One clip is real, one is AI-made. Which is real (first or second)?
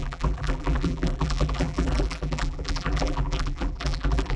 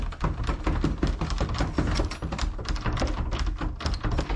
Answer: second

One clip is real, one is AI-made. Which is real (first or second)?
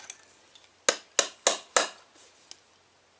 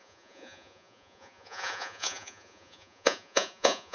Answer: first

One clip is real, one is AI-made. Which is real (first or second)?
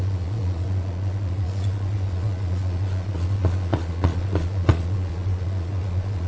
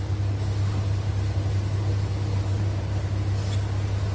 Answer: second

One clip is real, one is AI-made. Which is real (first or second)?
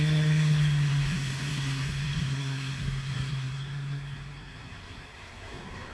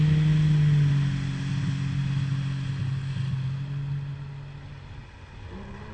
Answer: second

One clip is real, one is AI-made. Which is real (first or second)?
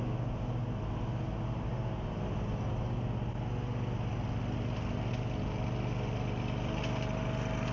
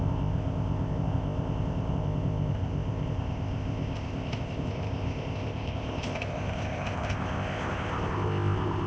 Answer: first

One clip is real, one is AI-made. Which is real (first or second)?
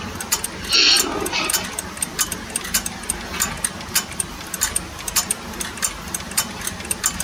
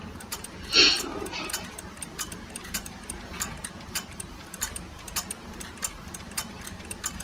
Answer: first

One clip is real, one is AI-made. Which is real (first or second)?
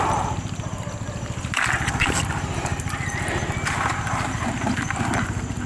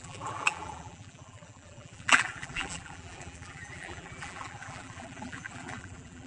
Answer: first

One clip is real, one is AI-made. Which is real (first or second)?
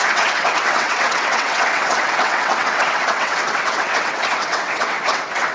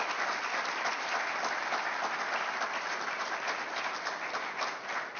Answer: second